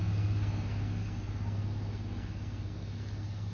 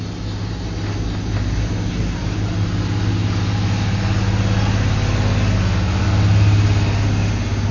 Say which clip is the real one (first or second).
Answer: second